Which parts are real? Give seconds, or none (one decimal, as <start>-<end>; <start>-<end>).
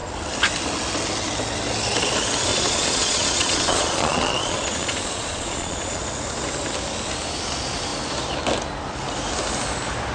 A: 0.0-2.5; 6.0-10.1